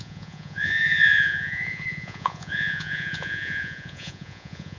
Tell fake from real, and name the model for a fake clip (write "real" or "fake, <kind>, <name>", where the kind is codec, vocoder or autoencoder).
fake, vocoder, Vocos